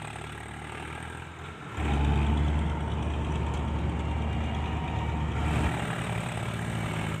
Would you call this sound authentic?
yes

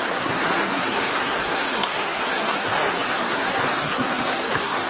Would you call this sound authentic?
no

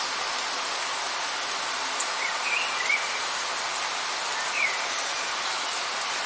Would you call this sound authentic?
yes